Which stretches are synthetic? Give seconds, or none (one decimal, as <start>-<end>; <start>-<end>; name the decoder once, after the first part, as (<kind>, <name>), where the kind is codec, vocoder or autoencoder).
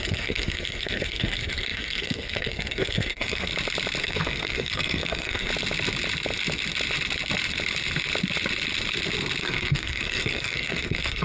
0.0-3.5 (codec, SNAC); 4.0-5.5; 9.4-11.2